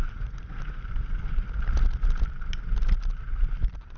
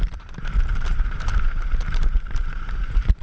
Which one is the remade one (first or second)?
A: second